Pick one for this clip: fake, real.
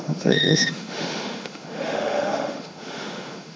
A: fake